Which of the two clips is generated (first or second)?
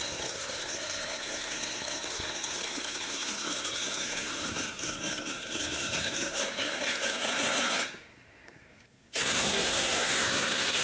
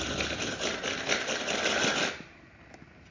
first